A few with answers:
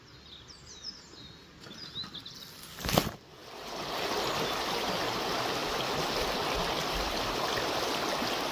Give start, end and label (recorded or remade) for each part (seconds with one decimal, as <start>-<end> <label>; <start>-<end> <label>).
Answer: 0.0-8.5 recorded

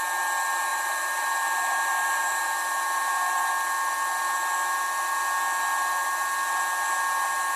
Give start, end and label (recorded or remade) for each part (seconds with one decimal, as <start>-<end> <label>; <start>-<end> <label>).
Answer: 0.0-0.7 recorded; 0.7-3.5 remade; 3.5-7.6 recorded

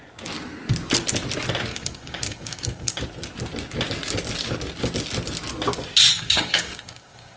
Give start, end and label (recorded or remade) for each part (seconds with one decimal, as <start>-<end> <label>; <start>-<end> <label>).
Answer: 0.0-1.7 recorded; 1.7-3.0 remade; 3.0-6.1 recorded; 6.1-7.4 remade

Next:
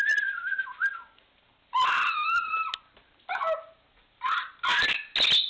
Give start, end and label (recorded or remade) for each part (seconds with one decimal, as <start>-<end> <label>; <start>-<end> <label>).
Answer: 0.0-5.5 recorded